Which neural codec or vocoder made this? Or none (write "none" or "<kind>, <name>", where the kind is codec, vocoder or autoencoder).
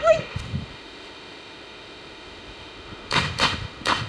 autoencoder, DAC-VAE